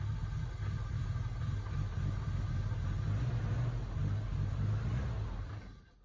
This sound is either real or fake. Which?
real